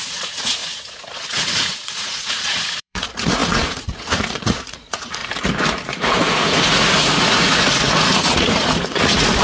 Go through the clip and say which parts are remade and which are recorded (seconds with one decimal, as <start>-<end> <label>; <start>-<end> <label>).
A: 0.0-5.2 remade; 5.2-6.0 recorded; 6.0-9.4 remade